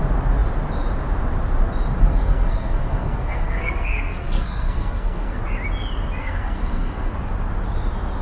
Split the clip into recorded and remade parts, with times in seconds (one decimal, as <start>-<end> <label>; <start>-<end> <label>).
0.0-2.0 recorded; 2.0-5.4 remade; 5.4-6.2 recorded; 6.2-7.1 remade; 7.1-8.2 recorded

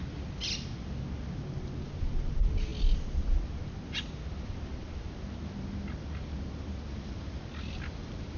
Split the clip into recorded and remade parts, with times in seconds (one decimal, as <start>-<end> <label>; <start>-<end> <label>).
0.0-8.4 recorded

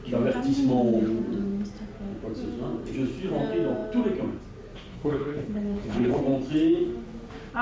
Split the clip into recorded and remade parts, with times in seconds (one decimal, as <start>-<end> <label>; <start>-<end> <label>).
0.0-4.9 recorded; 4.9-6.2 remade; 6.2-7.6 recorded

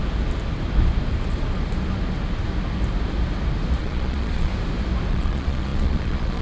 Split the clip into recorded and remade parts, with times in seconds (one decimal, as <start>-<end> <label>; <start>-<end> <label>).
0.0-3.8 recorded; 3.8-4.5 remade; 4.5-5.1 recorded; 5.1-6.4 remade

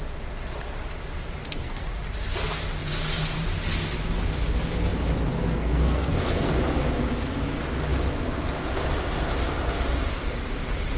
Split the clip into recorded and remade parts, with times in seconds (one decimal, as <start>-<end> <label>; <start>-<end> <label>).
0.0-1.4 recorded; 1.4-1.9 remade; 1.9-5.3 recorded; 5.3-6.6 remade; 6.6-11.0 recorded

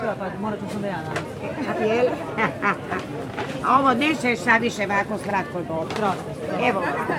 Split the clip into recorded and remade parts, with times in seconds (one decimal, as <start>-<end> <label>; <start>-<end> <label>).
0.0-3.1 recorded; 3.1-4.1 remade; 4.1-5.3 recorded; 5.3-6.5 remade; 6.5-7.2 recorded

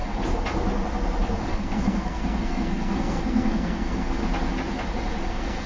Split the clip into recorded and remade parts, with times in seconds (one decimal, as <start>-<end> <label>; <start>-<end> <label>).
0.0-1.5 recorded; 1.5-4.2 remade; 4.2-5.3 recorded; 5.3-5.7 remade